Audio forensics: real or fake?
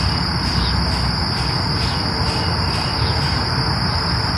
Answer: real